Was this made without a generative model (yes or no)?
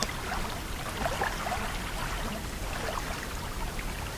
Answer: yes